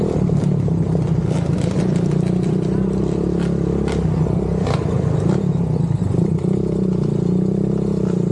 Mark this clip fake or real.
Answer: real